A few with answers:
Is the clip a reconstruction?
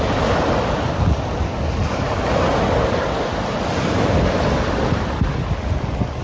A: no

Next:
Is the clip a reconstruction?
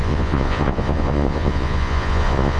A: yes